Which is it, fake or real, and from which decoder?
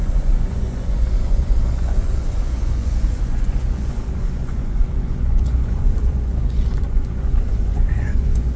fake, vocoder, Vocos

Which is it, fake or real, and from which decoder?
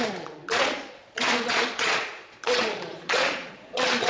fake, vocoder, Vocos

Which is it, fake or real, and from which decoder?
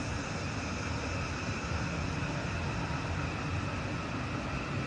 real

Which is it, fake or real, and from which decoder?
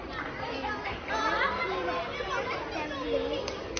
real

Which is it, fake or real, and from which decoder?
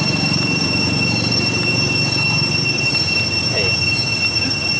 real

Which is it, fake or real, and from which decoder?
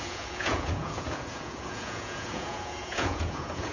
fake, vocoder, Vocos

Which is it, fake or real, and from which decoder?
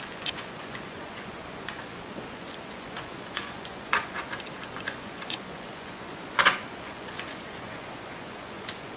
fake, vocoder, Vocos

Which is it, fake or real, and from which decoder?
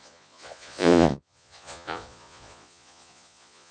fake, vocoder, Vocos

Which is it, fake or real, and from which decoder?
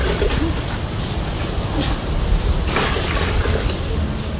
real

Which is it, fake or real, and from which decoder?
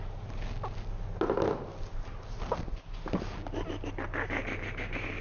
real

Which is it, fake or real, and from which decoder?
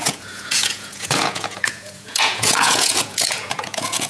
fake, vocoder, Vocos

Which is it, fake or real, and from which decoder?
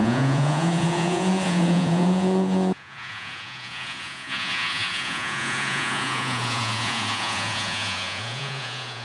fake, vocoder, Vocos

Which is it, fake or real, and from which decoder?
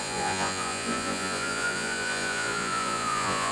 fake, vocoder, Vocos